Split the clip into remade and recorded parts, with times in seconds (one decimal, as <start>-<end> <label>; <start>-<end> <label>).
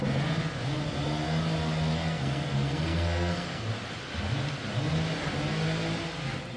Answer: 0.0-1.9 recorded; 1.9-3.7 remade; 3.7-6.6 recorded